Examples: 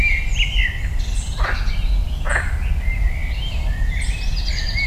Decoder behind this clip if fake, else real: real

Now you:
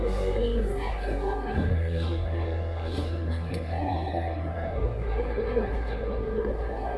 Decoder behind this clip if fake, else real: fake, codec, SNAC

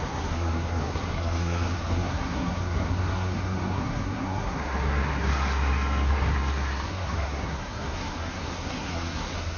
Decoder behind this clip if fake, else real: fake, codec, SNAC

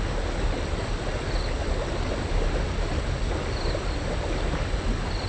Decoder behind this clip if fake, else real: real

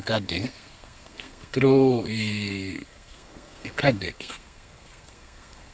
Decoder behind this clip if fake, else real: fake, codec, SNAC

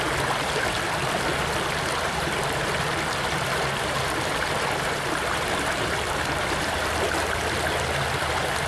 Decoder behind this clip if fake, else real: real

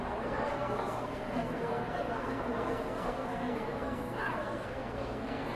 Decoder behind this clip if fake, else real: fake, codec, SNAC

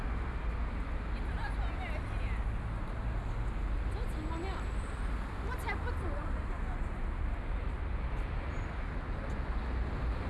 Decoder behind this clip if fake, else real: real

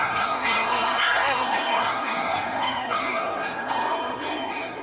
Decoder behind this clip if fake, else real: fake, codec, SNAC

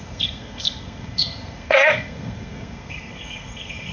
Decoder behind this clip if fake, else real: fake, codec, SNAC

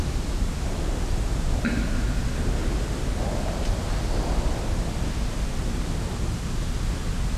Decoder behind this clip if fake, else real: real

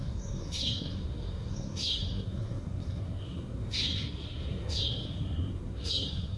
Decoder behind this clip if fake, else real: fake, codec, SNAC